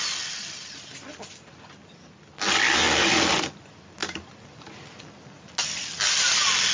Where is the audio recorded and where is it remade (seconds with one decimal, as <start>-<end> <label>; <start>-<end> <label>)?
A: 0.0-4.0 recorded; 4.0-4.7 remade; 4.7-6.7 recorded